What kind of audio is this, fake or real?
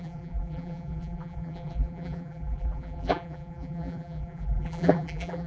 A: fake